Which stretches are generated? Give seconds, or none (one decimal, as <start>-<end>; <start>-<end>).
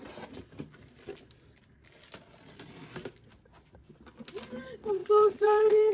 5.0-5.9